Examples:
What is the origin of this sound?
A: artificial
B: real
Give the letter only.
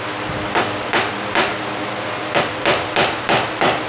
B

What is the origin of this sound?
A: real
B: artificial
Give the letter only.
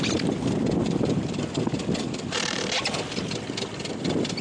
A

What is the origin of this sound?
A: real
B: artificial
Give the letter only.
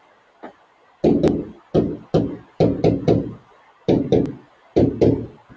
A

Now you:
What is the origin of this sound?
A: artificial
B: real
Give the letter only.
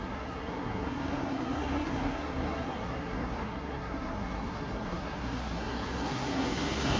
A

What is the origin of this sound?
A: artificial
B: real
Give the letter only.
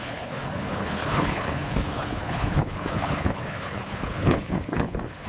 A